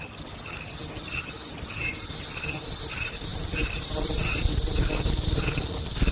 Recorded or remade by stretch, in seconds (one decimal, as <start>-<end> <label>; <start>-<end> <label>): 0.0-3.3 recorded; 3.3-4.4 remade; 4.4-6.1 recorded